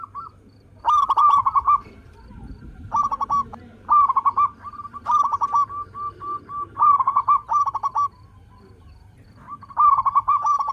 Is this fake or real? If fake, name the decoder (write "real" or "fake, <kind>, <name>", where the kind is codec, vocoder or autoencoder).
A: fake, vocoder, BigVGAN v2